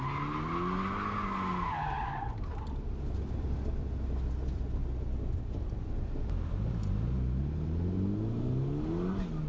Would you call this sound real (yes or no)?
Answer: yes